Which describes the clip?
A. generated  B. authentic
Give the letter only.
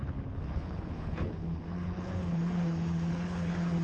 A